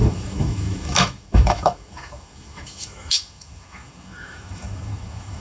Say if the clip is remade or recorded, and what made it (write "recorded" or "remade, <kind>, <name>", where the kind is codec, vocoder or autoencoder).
remade, autoencoder, DAC-VAE